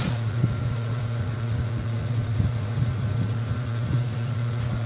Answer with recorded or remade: remade